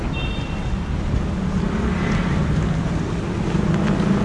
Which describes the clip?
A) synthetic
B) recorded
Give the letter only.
B